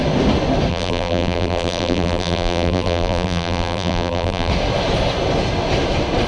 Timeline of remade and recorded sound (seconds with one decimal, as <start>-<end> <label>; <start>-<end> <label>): 0.0-0.7 recorded; 0.7-4.5 remade; 4.5-6.3 recorded